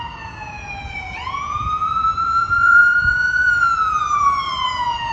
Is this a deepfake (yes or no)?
yes